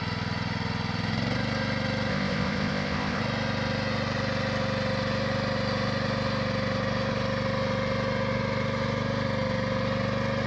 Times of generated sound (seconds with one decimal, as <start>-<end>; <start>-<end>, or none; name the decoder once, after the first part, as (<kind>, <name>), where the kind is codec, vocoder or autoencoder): 2.1-3.2 (codec, ZipCodec)